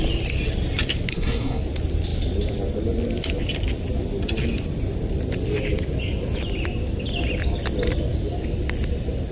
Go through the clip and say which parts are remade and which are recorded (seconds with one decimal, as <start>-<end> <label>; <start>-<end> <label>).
0.0-1.1 recorded; 1.1-1.6 remade; 1.6-9.3 recorded